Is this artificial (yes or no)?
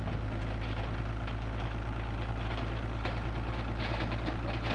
no